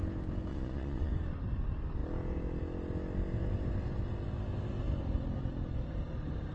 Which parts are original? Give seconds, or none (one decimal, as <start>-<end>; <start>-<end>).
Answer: 0.0-0.5; 1.1-6.5